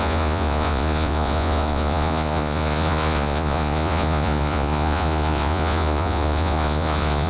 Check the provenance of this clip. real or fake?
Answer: fake